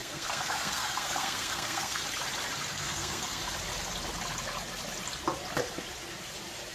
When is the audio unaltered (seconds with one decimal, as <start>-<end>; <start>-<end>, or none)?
2.0-2.7; 3.4-6.7